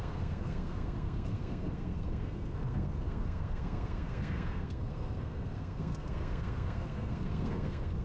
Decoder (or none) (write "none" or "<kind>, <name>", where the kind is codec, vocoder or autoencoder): codec, SNAC